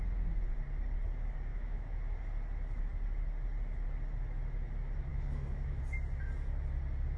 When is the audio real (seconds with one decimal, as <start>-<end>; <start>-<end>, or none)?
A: 0.0-1.5; 2.0-5.1; 5.8-7.2

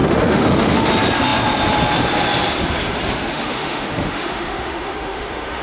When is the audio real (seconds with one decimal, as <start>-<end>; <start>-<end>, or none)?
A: 0.9-3.3

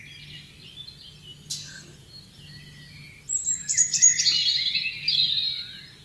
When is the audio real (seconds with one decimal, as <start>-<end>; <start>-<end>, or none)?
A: 0.0-6.0

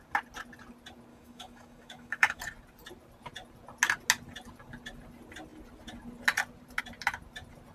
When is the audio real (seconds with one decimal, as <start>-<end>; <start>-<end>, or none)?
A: 0.0-1.1; 2.4-7.7